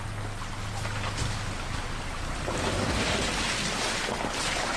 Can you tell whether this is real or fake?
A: real